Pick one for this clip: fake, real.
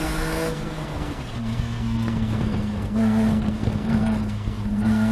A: fake